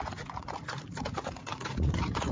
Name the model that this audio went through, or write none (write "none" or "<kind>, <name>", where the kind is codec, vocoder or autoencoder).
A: vocoder, Vocos